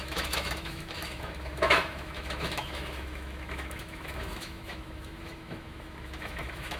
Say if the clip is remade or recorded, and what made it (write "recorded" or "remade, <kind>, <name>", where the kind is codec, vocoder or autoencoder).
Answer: remade, autoencoder, DAC-VAE